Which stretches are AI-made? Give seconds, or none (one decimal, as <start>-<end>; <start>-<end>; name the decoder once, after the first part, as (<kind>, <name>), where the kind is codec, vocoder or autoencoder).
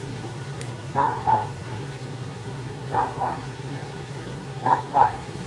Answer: 0.0-5.5 (codec, SNAC)